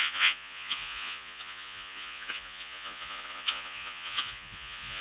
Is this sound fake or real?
fake